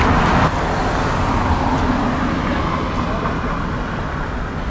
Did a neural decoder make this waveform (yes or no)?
no